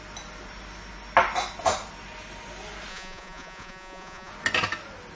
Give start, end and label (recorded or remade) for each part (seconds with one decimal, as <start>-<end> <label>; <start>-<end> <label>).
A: 0.0-2.9 recorded; 2.9-4.3 remade; 4.3-5.2 recorded